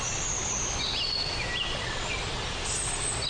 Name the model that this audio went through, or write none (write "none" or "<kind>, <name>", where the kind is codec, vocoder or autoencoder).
none